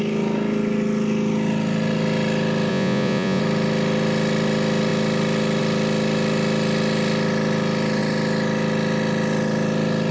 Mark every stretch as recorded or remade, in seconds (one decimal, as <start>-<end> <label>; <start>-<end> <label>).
0.0-2.7 recorded; 2.7-3.4 remade; 3.4-10.1 recorded